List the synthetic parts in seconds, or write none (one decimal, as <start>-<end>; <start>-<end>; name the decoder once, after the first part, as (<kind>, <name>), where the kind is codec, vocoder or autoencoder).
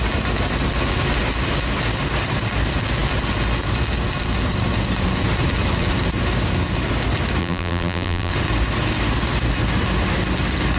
7.4-8.3 (vocoder, BigVGAN v2)